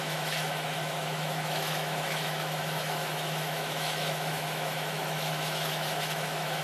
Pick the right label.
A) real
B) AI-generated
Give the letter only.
B